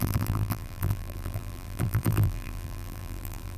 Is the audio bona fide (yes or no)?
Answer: no